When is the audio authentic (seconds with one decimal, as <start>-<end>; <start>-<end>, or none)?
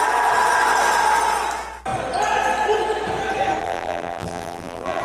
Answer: 0.0-3.6